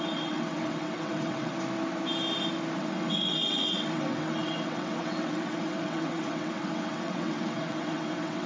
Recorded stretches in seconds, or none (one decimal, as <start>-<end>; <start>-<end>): 1.5-2.8